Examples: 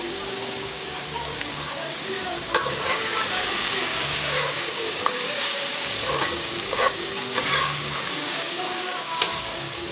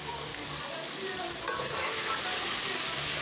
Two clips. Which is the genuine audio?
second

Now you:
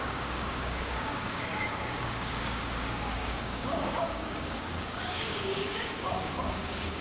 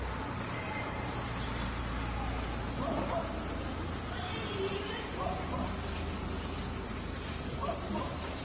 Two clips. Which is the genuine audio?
second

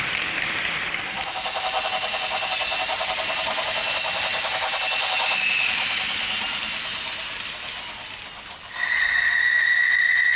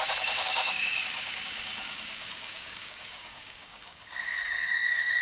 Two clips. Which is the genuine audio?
first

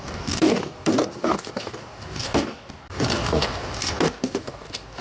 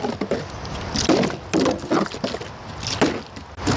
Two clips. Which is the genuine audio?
second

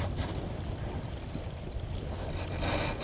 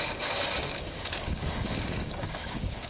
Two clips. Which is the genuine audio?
first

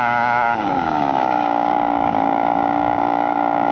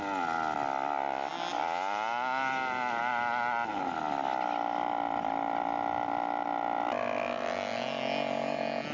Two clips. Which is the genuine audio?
second